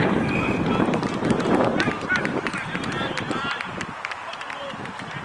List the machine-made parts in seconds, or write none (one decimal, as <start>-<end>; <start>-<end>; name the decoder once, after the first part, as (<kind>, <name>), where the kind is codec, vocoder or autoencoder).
1.7-3.6 (vocoder, BigVGAN v2)